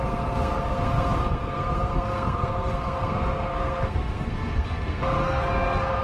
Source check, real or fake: fake